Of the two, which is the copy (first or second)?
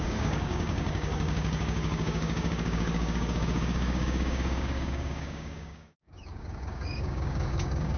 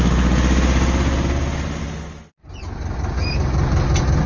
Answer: first